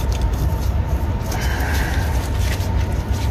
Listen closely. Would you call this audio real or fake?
real